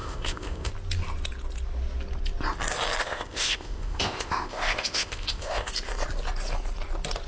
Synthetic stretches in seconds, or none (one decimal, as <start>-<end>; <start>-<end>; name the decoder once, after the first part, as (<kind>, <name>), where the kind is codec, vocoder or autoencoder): 0.0-0.7 (codec, ZipCodec); 3.0-5.7